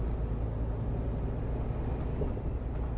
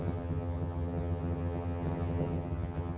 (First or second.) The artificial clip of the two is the second